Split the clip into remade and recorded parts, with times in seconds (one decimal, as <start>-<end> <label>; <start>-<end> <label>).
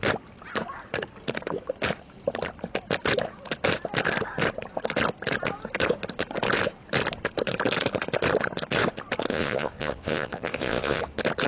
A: 0.0-9.3 recorded; 9.3-11.0 remade; 11.0-11.5 recorded